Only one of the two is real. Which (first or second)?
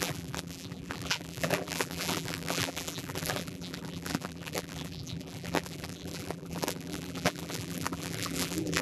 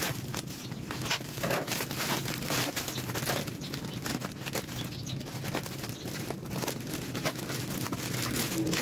second